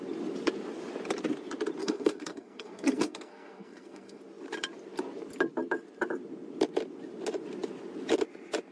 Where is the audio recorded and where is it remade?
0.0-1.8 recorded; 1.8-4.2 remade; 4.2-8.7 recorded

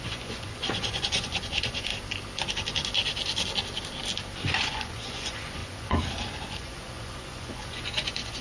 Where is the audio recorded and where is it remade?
0.0-1.9 remade; 1.9-4.4 recorded; 4.4-8.4 remade

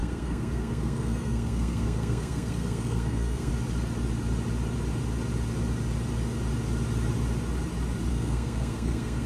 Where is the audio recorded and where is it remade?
0.0-3.5 remade; 3.5-8.1 recorded; 8.1-9.3 remade

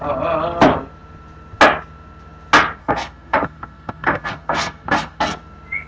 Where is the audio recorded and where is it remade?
0.0-2.8 recorded; 2.8-5.2 remade; 5.2-5.9 recorded

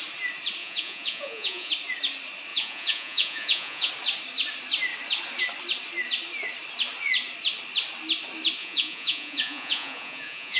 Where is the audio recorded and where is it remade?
0.0-0.6 recorded; 0.6-1.7 remade; 1.7-2.5 recorded; 2.5-3.9 remade; 3.9-8.6 recorded; 8.6-10.6 remade

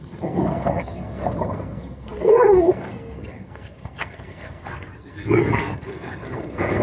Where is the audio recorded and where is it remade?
0.0-6.8 remade